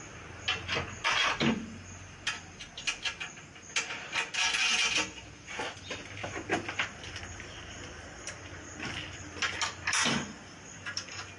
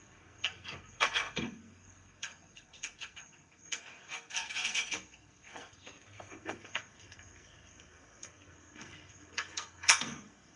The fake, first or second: second